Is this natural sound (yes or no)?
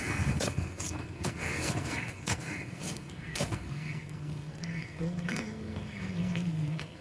no